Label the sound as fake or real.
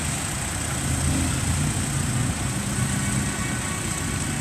real